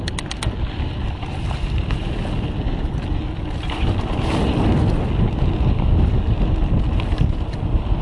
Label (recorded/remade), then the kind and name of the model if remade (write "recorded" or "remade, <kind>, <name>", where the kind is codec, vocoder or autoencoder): recorded